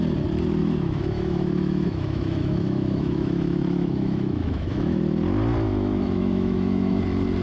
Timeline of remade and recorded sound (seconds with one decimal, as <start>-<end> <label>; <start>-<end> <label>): 0.0-0.6 recorded; 0.6-5.0 remade; 5.0-5.7 recorded; 5.7-7.0 remade; 7.0-7.4 recorded